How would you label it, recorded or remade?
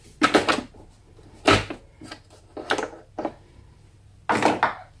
recorded